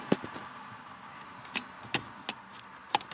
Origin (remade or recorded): recorded